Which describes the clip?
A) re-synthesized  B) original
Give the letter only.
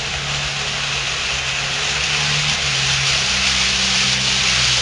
B